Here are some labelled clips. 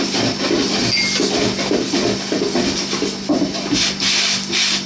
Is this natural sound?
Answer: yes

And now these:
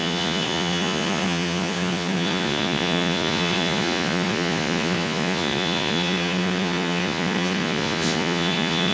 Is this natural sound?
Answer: no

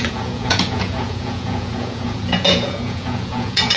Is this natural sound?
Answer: no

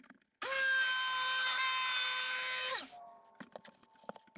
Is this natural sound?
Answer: yes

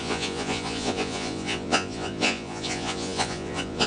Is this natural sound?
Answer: no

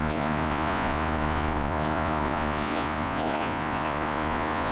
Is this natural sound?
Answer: no